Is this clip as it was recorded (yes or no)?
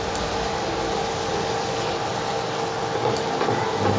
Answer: yes